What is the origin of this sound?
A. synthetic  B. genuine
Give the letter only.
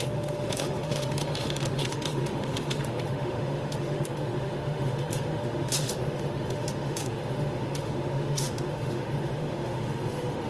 A